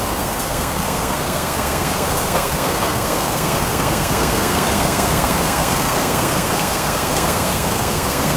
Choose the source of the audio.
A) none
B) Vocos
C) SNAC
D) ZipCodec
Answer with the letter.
C